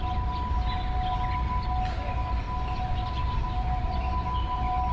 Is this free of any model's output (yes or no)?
yes